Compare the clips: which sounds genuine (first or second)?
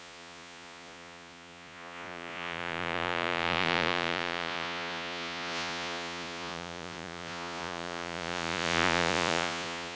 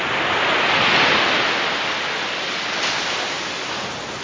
second